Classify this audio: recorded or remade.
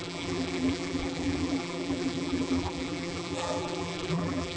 remade